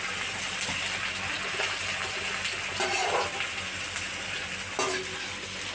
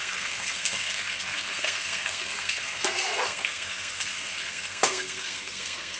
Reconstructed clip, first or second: second